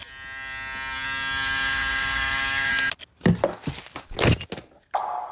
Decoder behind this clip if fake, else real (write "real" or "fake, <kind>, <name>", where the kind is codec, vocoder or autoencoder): real